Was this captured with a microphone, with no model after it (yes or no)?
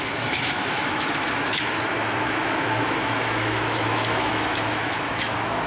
no